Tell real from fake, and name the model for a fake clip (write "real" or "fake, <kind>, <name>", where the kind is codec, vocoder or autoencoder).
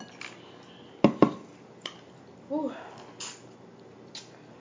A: real